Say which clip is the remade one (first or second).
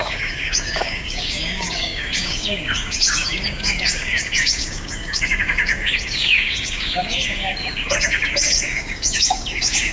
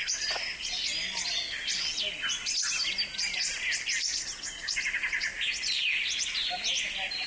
first